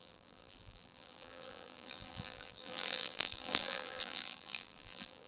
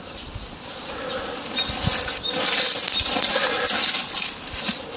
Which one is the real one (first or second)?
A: second